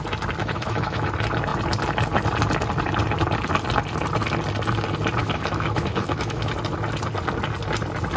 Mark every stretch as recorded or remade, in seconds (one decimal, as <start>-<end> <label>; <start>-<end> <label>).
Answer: 0.0-0.4 recorded; 0.4-1.1 remade; 1.1-5.2 recorded; 5.2-6.5 remade; 6.5-8.2 recorded